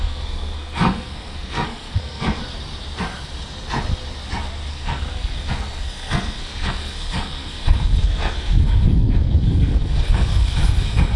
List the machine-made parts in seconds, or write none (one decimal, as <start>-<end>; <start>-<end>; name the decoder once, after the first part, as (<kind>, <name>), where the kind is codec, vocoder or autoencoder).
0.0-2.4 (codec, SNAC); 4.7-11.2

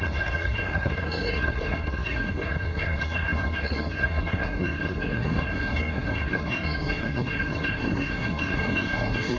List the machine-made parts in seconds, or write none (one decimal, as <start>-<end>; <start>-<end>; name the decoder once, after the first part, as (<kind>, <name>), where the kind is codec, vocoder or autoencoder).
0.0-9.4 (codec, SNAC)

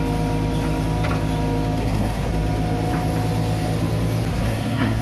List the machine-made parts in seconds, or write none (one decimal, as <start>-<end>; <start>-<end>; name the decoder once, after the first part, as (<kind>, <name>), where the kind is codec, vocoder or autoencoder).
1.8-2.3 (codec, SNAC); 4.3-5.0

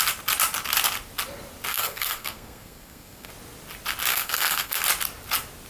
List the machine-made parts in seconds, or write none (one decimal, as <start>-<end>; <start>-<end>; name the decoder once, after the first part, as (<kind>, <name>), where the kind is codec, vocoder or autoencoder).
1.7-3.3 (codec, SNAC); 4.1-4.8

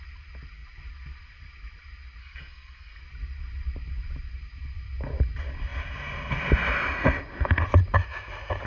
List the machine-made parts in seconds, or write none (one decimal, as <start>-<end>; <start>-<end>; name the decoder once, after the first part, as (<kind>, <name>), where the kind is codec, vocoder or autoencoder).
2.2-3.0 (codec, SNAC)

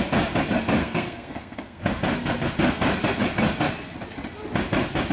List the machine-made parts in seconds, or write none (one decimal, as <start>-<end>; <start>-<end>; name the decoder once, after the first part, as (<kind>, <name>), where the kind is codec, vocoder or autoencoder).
0.8-1.8 (codec, SNAC)

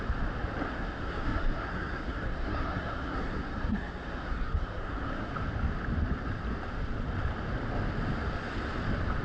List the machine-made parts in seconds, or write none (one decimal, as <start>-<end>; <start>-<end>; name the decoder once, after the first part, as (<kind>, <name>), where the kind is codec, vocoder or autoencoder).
0.6-5.3 (codec, SNAC)